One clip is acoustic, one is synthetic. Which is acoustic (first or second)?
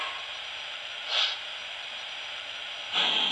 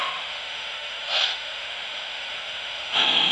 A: first